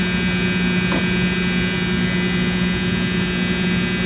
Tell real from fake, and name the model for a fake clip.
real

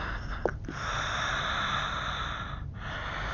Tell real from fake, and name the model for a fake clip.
real